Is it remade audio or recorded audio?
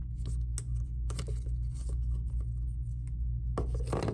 recorded